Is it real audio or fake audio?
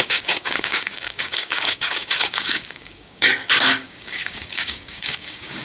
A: fake